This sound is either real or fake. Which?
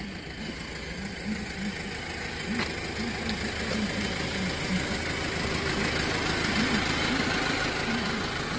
real